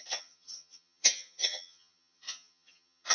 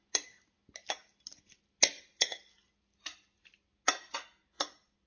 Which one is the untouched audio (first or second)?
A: second